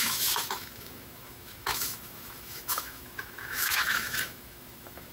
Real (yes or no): no